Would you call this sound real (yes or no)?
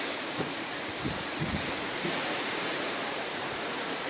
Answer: no